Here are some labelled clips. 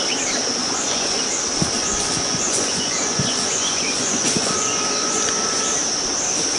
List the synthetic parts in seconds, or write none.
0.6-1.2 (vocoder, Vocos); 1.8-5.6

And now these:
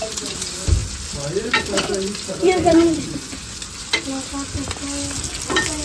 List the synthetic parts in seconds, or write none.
2.7-3.6 (vocoder, Vocos)

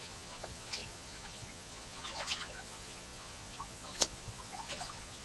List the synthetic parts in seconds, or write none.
0.0-5.2 (vocoder, Vocos)